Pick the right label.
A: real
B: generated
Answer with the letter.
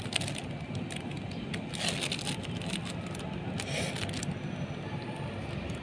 A